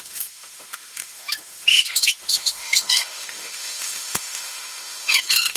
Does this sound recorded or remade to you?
remade